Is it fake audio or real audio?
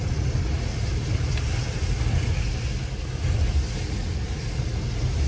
real